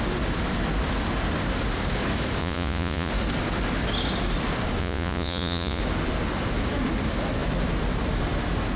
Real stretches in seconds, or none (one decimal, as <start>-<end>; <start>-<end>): 0.0-2.4; 3.1-4.8; 5.8-8.8